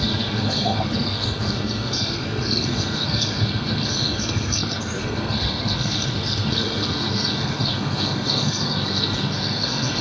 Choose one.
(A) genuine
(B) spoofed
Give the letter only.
B